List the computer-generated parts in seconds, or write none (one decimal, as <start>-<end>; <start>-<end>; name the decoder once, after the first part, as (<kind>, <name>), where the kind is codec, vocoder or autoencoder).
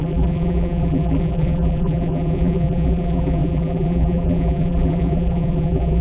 0.0-6.0 (vocoder, BigVGAN v2)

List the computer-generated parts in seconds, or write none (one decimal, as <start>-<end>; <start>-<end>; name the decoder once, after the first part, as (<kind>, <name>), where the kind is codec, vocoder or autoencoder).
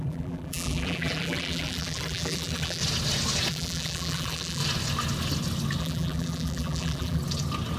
0.0-2.8 (vocoder, BigVGAN v2); 3.5-4.6; 5.8-7.2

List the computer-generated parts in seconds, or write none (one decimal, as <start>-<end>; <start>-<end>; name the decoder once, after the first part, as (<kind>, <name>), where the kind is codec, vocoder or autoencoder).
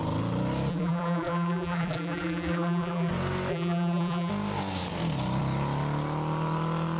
0.7-3.1 (vocoder, BigVGAN v2); 3.5-4.3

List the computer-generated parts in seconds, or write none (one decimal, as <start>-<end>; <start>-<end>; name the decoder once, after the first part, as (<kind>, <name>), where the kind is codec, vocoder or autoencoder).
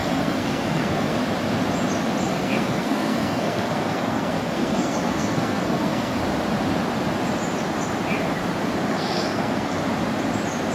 0.0-1.2 (codec, SNAC); 2.2-6.2; 8.9-9.8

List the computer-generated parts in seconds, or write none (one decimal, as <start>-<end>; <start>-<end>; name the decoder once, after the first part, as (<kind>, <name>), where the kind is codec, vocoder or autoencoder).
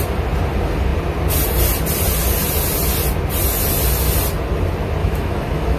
5.0-5.8 (autoencoder, DAC-VAE)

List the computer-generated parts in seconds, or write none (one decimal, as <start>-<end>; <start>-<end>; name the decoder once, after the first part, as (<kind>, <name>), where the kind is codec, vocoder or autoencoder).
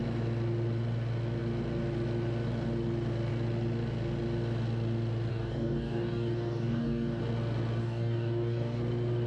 5.3-7.2 (codec, DAC); 7.8-8.8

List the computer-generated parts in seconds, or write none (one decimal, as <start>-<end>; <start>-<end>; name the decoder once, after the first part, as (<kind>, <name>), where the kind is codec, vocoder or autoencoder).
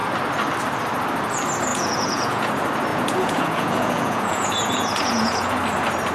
1.7-2.5 (vocoder, Vocos); 2.9-5.6